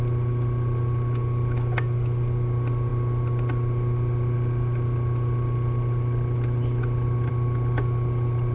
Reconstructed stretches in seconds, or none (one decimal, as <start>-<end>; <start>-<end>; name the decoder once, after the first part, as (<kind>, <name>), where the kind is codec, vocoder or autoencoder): none